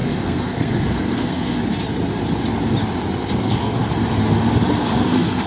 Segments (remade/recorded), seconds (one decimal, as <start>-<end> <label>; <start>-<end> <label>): 0.0-1.6 remade; 1.6-3.4 recorded; 3.4-3.9 remade; 3.9-4.8 recorded; 4.8-5.5 remade